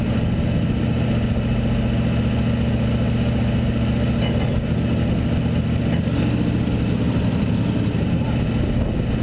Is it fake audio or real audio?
real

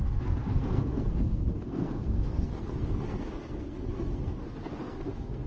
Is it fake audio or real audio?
fake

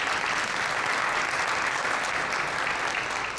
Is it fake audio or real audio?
real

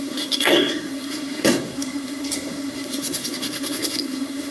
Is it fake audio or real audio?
fake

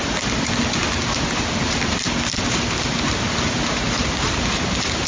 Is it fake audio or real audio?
real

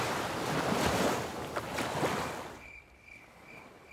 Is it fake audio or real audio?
real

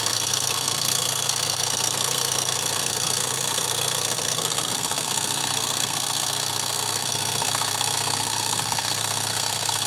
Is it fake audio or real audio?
fake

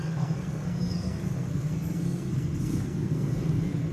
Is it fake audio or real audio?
fake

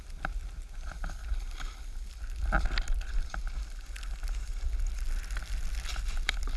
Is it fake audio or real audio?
real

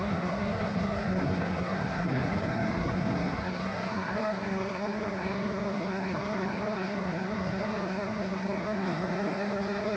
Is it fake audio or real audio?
fake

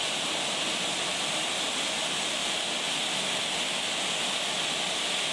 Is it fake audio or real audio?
real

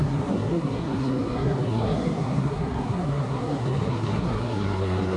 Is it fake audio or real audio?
fake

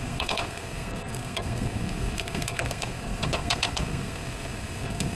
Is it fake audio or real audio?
fake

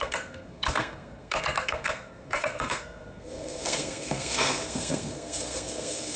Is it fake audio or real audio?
fake